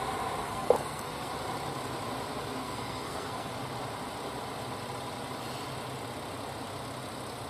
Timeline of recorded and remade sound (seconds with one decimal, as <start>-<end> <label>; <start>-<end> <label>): 0.0-0.4 recorded; 0.4-1.3 remade; 1.3-2.6 recorded; 2.6-3.5 remade; 3.5-7.5 recorded